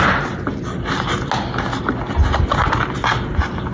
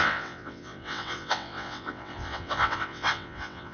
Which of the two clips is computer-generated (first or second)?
second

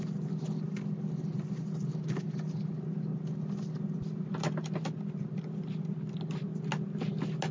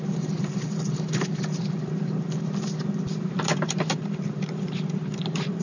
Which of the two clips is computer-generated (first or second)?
second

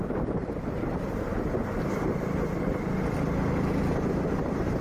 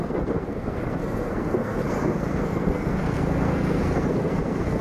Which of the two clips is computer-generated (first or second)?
second